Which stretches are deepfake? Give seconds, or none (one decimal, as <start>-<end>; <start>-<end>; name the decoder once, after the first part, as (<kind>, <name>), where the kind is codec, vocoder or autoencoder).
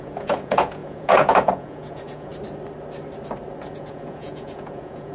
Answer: 0.0-2.3 (vocoder, Vocos); 3.6-5.1